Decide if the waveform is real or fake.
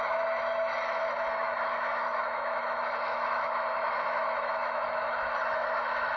fake